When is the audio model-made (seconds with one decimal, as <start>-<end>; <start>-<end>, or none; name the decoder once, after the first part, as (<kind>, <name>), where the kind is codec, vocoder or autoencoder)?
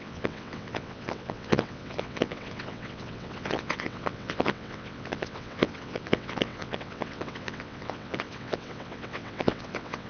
0.0-10.1 (vocoder, WaveNeXt)